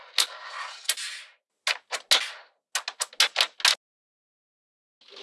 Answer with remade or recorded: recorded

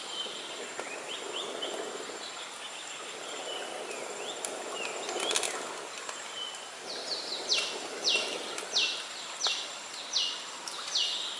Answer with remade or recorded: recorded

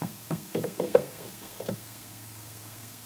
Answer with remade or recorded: remade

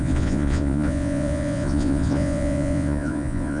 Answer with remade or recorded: remade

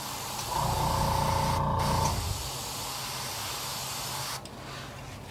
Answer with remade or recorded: recorded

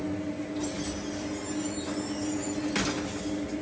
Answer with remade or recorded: recorded